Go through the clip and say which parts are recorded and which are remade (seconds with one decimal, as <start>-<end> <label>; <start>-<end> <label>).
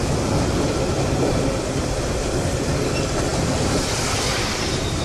0.0-5.0 recorded